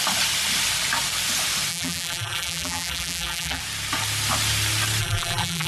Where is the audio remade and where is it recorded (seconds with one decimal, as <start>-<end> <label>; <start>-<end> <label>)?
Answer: 0.0-1.7 recorded; 1.7-3.6 remade; 3.6-5.0 recorded; 5.0-5.7 remade